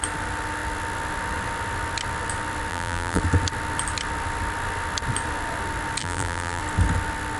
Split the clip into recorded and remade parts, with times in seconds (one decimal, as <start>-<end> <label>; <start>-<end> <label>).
0.0-2.7 recorded; 2.7-3.2 remade; 3.2-6.0 recorded; 6.0-6.6 remade; 6.6-7.4 recorded